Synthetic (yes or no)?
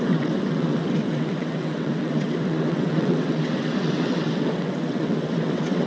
yes